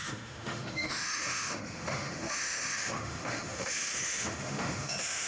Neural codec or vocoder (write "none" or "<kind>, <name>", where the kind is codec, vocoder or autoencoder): autoencoder, DAC-VAE